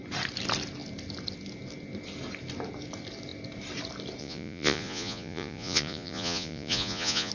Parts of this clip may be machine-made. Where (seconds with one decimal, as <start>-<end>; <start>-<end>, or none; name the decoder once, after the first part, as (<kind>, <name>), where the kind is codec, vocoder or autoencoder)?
4.2-7.3 (vocoder, Vocos)